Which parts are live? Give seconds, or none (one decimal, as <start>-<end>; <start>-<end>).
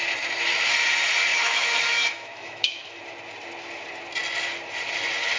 0.0-1.3; 3.0-5.4